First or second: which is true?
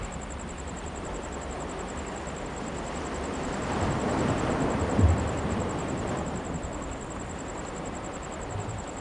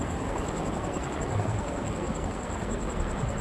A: first